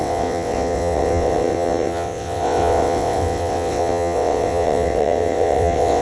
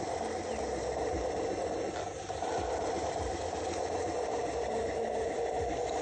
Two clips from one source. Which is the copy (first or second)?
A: first